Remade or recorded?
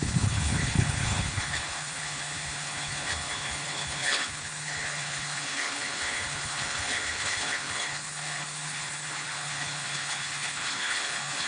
remade